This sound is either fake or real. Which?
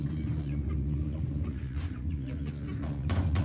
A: fake